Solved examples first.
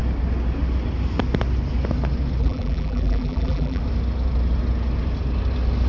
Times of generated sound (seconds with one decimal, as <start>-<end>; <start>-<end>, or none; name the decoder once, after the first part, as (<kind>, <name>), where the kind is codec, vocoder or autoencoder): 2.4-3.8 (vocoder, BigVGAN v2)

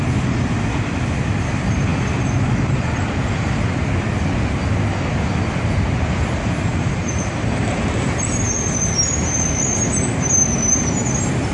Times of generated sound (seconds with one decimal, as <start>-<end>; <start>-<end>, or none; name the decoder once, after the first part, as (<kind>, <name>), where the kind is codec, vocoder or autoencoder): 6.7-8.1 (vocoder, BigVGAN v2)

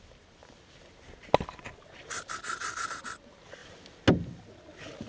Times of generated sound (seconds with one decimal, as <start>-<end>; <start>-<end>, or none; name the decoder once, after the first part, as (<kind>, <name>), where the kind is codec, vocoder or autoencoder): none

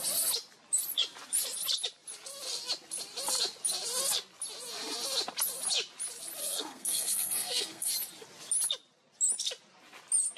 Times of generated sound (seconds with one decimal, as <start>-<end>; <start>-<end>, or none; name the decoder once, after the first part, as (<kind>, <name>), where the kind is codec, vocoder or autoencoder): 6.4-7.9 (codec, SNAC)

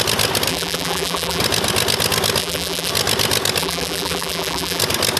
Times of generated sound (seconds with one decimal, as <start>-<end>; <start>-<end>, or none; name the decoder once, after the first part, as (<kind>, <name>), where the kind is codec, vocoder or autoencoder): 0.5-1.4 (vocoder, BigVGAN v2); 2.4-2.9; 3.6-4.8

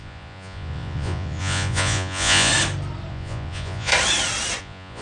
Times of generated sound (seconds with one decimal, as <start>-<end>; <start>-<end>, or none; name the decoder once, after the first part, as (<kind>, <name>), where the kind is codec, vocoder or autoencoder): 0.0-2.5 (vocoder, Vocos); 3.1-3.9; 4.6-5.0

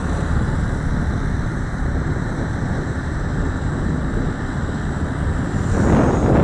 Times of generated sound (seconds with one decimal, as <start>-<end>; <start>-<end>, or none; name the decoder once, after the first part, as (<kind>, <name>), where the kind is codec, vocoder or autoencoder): 1.5-4.1 (vocoder, BigVGAN v2)